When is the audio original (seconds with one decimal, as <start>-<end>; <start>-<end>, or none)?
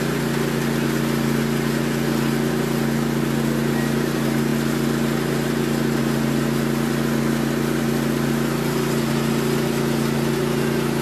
0.0-11.0